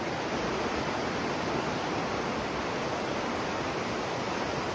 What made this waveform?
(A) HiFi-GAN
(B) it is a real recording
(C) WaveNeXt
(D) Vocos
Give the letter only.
B